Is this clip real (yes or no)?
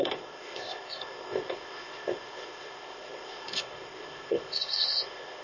no